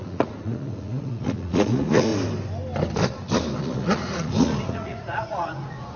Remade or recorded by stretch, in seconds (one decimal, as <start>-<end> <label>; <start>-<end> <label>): 0.0-2.1 remade; 2.1-3.6 recorded; 3.6-6.0 remade